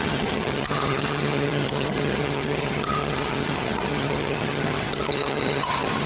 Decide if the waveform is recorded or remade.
remade